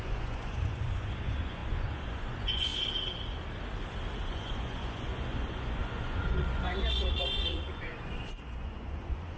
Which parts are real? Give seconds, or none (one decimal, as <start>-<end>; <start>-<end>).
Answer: 2.7-4.2